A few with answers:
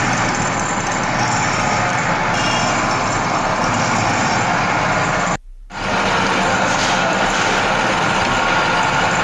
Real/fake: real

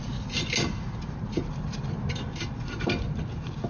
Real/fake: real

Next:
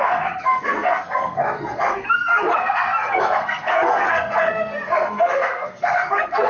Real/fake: fake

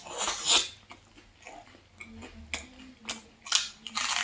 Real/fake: real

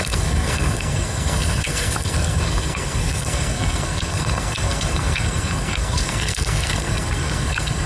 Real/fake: fake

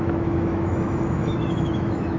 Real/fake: fake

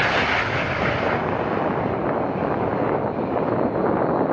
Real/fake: real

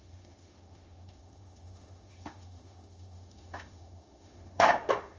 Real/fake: fake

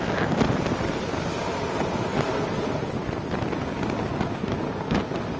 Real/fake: real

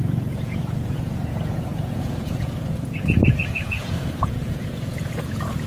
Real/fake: fake